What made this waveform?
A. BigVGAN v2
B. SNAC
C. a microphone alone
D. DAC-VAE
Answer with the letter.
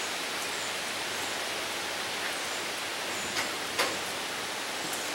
C